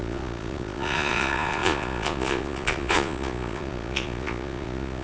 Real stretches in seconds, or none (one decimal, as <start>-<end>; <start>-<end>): none